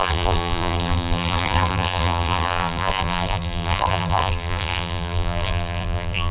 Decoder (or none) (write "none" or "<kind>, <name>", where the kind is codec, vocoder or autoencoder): vocoder, BigVGAN v2